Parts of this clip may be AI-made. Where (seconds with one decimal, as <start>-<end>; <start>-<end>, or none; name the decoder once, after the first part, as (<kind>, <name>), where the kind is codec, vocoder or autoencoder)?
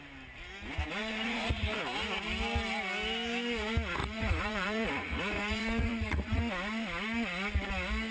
1.0-1.7 (vocoder, Vocos); 4.0-6.4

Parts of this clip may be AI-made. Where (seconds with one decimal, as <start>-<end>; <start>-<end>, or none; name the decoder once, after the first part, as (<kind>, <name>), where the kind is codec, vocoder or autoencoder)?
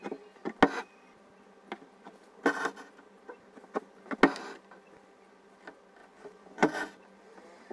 6.0-6.9 (vocoder, Vocos)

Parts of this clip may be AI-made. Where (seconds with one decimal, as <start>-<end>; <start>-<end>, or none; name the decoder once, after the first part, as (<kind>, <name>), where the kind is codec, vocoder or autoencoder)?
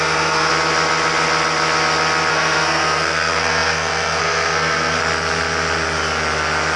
0.0-0.5 (codec, SNAC); 2.3-5.0